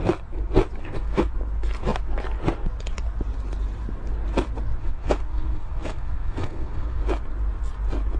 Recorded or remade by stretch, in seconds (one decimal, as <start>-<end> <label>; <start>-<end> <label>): 0.0-0.8 recorded; 0.8-1.3 remade; 1.3-4.8 recorded; 4.8-7.0 remade; 7.0-8.2 recorded